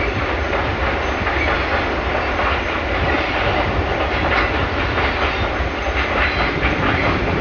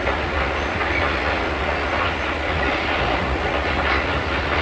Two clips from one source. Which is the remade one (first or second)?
second